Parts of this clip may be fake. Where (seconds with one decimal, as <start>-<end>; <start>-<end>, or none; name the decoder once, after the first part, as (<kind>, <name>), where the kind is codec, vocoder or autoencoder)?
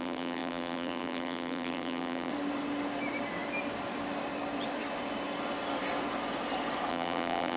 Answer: 0.0-2.3 (vocoder, BigVGAN v2); 6.9-7.6